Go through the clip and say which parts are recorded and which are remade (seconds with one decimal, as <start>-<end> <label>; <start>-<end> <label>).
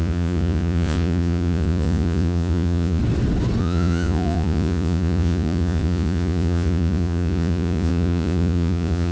0.0-3.0 remade; 3.0-3.6 recorded; 3.6-9.1 remade